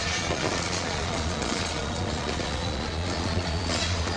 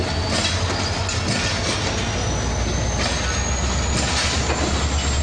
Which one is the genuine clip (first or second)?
second